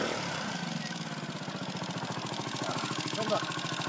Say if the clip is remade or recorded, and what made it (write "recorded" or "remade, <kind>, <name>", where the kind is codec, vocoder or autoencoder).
recorded